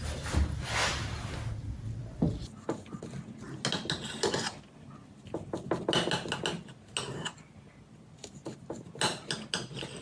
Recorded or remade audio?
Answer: recorded